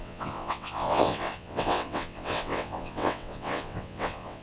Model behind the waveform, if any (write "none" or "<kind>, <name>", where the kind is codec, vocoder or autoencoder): vocoder, WaveNeXt